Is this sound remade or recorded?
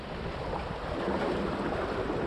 recorded